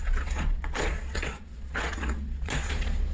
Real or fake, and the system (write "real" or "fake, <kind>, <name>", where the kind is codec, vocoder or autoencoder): fake, vocoder, Vocos